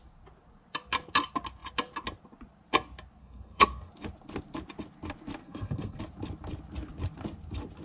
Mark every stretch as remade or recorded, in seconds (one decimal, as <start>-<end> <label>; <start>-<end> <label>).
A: 0.0-3.2 recorded; 3.2-3.9 remade; 3.9-5.4 recorded; 5.4-6.0 remade; 6.0-7.8 recorded